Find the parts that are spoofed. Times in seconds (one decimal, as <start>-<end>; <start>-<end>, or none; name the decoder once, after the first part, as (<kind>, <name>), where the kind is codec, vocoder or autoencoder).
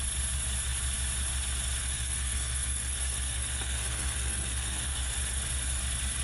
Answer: 1.8-5.1 (codec, SNAC)